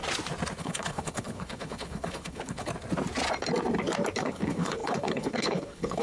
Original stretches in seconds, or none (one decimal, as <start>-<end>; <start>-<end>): 0.0-0.6; 2.7-4.2